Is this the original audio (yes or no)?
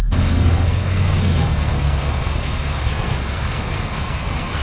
no